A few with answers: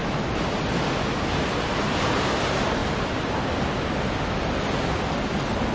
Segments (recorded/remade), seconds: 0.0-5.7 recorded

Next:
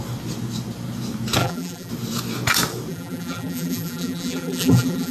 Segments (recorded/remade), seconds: 0.0-1.4 recorded; 1.4-1.9 remade; 1.9-2.9 recorded; 2.9-5.1 remade

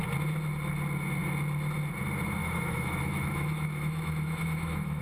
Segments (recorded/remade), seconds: 0.0-2.4 recorded; 2.4-5.0 remade

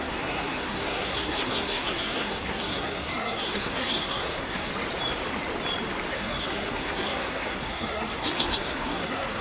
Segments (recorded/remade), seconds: 0.0-4.7 remade; 4.7-6.1 recorded; 6.1-9.4 remade

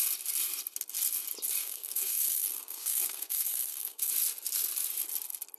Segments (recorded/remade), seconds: 0.0-1.6 recorded; 1.6-4.1 remade; 4.1-5.6 recorded